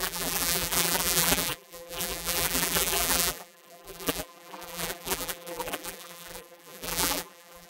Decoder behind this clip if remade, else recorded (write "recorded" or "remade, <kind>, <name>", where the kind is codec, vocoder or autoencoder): remade, vocoder, BigVGAN v2